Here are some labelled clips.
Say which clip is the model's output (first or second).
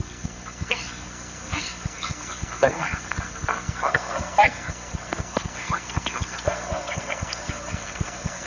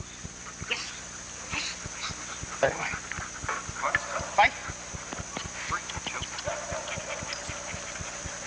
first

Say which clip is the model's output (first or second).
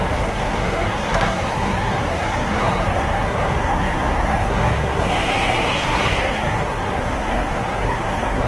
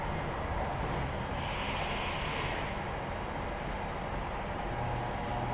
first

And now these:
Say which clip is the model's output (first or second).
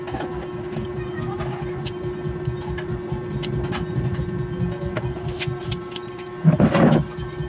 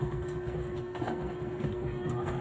second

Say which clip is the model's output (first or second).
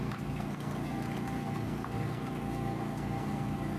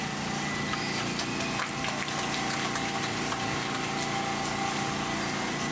first